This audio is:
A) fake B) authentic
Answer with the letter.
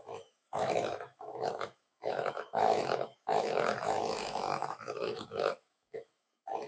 A